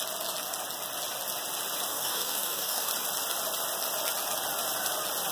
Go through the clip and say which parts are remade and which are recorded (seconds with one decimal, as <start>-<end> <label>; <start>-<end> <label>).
0.0-1.9 recorded; 1.9-2.9 remade; 2.9-5.3 recorded